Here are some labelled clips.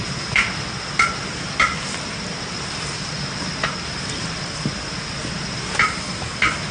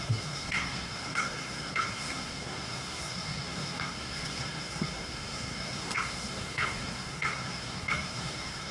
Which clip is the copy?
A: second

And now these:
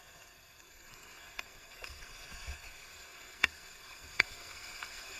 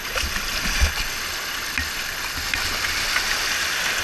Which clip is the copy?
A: first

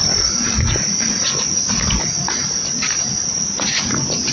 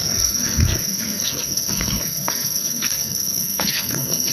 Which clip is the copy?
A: second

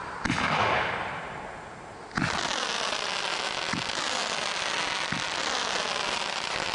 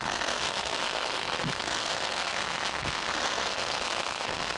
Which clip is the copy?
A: second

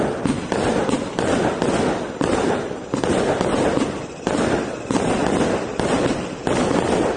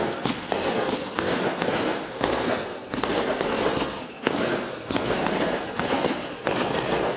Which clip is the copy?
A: second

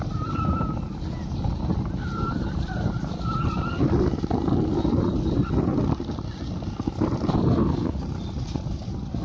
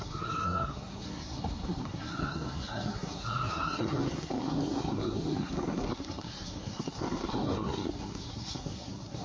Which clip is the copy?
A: second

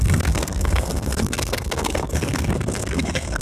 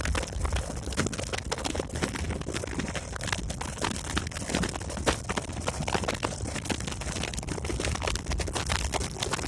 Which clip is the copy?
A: first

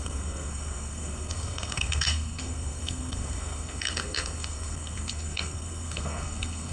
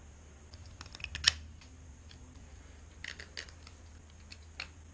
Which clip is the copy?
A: first